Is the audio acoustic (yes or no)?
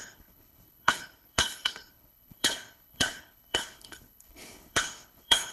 no